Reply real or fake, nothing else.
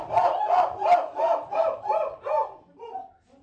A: real